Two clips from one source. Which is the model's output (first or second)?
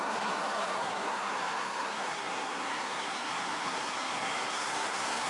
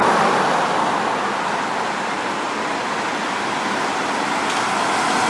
first